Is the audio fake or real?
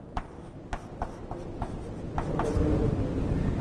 real